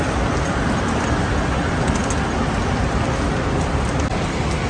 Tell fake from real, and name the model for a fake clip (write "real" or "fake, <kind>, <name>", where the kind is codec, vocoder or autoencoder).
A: real